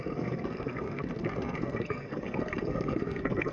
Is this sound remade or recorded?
remade